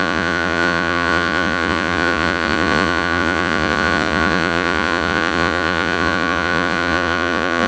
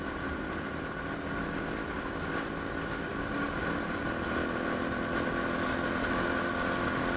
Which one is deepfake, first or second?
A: first